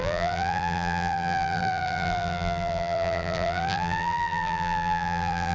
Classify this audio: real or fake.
fake